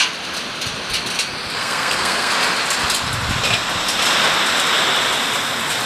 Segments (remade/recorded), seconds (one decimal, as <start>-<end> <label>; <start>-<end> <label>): 0.0-1.6 recorded; 1.6-2.3 remade; 2.3-5.9 recorded